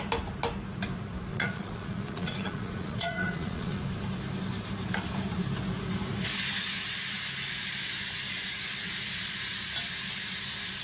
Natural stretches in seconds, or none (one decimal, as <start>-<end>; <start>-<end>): 0.0-1.3; 3.8-10.8